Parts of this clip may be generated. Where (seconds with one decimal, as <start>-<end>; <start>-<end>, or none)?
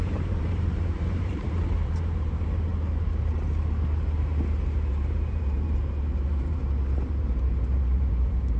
0.0-2.7; 4.9-6.6; 7.1-8.6